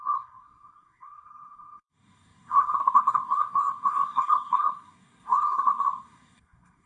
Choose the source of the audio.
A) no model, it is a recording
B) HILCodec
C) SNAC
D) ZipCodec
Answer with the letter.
C